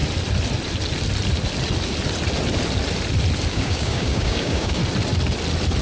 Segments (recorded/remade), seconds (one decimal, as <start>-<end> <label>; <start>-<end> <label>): 0.0-3.5 recorded; 3.5-4.8 remade; 4.8-5.8 recorded